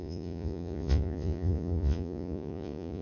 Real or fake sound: fake